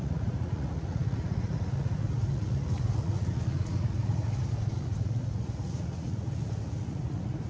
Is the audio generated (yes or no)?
yes